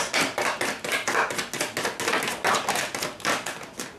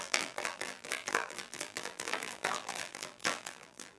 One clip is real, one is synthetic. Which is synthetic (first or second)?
second